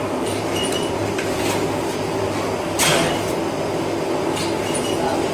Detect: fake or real real